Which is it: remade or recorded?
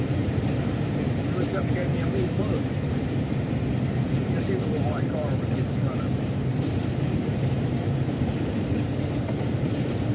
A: remade